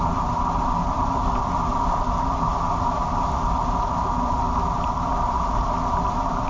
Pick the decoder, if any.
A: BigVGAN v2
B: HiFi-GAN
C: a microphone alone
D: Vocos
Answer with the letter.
C